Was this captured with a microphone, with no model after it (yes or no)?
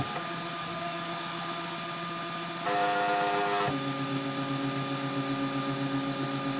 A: yes